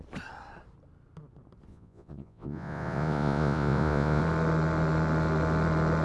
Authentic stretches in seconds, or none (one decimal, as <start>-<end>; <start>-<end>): 0.0-1.7; 4.2-6.0